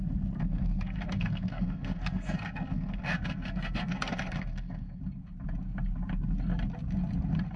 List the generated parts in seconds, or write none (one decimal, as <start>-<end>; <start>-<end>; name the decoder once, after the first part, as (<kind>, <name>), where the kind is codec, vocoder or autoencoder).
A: 0.4-5.0 (codec, SNAC)